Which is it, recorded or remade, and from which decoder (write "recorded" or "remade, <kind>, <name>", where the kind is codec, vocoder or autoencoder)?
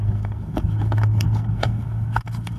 remade, codec, SNAC